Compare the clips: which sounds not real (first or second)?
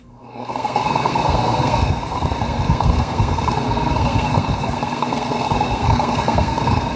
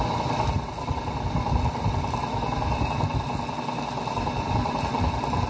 first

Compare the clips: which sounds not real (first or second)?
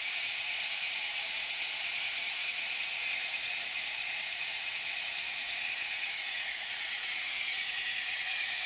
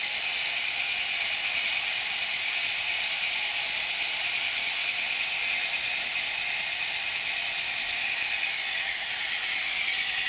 first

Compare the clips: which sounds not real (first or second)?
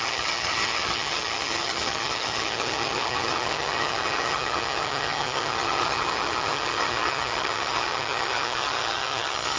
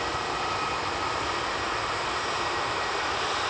first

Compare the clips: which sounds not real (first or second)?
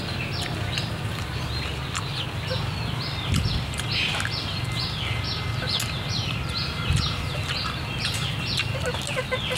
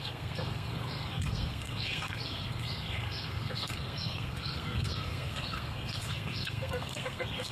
second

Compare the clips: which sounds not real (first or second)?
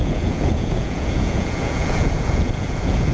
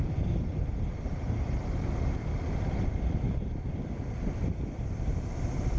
first